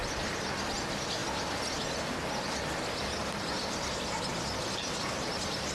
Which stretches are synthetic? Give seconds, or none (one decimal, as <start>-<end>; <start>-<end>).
none